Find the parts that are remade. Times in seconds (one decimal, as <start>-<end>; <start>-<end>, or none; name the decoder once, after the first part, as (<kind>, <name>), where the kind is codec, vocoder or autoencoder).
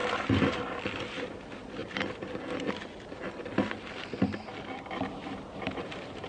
0.5-6.3 (vocoder, BigVGAN v2)